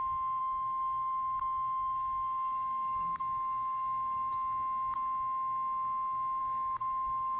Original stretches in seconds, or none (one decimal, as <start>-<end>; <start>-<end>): 0.0-0.4; 4.3-6.4